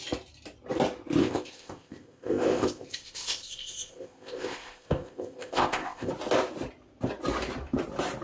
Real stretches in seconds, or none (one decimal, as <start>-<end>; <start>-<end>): 0.0-1.2; 6.1-8.2